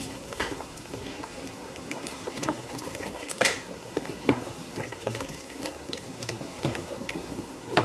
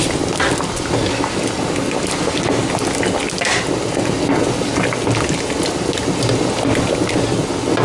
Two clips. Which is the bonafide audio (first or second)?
second